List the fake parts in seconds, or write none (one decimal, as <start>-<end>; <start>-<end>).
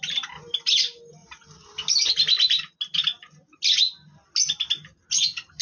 none